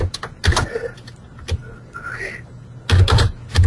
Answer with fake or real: real